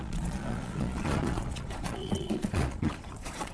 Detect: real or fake fake